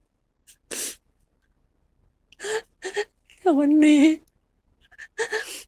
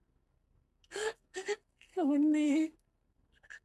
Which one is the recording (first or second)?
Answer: first